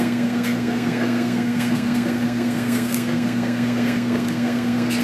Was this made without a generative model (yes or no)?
no